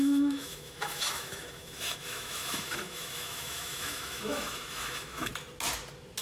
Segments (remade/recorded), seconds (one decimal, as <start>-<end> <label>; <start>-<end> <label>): 0.0-5.3 remade; 5.3-6.2 recorded